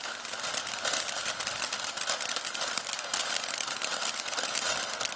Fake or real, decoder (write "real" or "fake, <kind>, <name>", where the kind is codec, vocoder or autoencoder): real